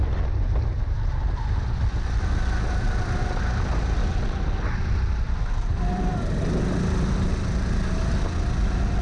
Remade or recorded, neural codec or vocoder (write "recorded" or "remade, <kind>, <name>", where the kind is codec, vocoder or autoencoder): recorded